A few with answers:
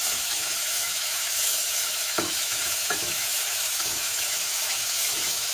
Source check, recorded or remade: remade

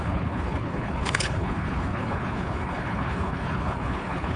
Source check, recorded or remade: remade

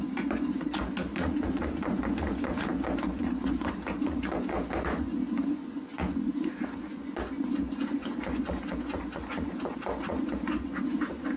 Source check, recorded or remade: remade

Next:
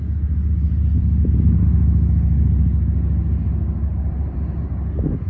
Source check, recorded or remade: recorded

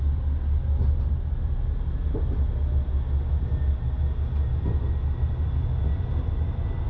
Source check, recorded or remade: recorded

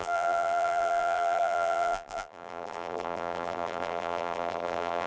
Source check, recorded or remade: remade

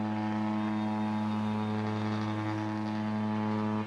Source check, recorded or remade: recorded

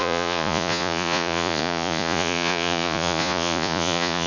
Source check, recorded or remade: remade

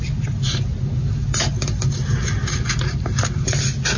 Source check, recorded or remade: recorded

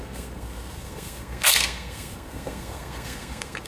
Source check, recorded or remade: remade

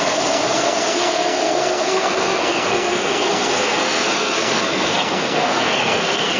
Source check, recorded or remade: remade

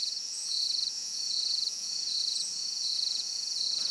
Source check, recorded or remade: remade